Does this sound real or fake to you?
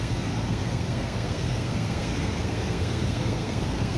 fake